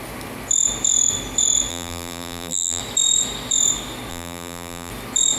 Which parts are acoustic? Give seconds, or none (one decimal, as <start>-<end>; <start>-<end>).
0.0-1.7; 2.8-4.1; 4.9-5.4